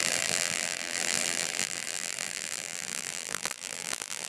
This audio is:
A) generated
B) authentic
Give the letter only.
A